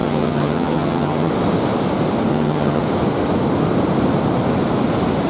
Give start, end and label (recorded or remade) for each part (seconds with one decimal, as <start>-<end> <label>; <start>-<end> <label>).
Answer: 0.0-1.3 remade; 1.3-2.3 recorded; 2.3-2.8 remade; 2.8-5.3 recorded